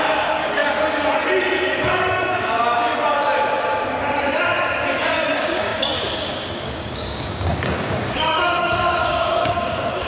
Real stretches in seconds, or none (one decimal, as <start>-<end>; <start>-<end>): 0.6-1.7; 2.9-4.9